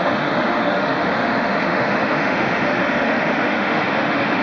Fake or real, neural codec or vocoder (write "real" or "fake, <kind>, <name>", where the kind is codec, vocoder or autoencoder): fake, autoencoder, DAC-VAE